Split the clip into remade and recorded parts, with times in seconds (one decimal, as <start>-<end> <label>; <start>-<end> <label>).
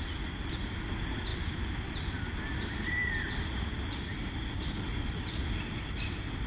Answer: 0.0-6.5 recorded